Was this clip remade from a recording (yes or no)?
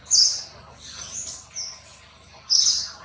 no